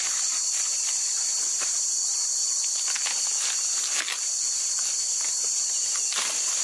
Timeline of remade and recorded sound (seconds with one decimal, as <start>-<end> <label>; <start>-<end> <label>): 0.0-6.6 recorded